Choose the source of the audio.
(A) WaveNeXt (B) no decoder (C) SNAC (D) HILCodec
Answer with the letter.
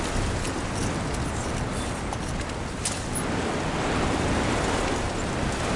B